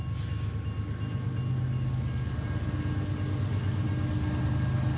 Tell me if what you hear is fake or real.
real